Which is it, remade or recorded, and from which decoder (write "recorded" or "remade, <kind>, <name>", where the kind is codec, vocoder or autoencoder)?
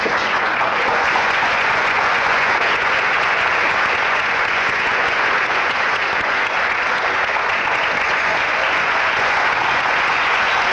remade, vocoder, Vocos